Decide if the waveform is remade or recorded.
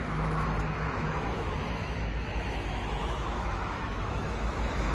remade